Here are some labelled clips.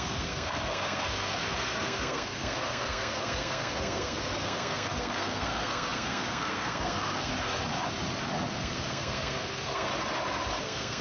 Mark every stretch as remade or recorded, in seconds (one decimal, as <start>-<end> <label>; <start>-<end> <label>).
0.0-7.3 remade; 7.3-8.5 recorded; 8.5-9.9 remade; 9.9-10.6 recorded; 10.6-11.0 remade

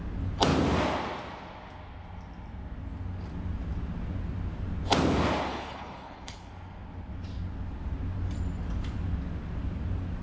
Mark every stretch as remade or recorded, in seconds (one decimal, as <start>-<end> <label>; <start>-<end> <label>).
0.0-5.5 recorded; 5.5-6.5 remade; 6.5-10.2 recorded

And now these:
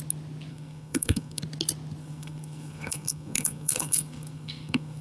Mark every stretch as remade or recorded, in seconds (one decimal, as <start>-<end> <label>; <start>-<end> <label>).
0.0-0.5 recorded; 0.5-1.4 remade; 1.4-2.0 recorded; 2.0-5.0 remade

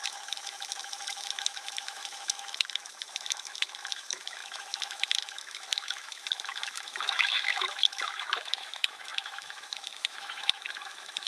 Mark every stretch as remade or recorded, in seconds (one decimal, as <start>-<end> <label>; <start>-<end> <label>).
0.0-11.3 remade